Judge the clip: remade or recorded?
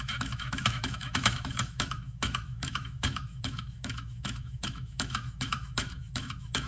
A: remade